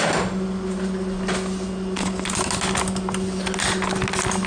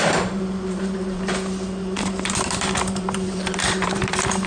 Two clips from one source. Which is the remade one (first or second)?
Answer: second